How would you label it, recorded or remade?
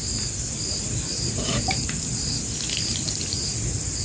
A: recorded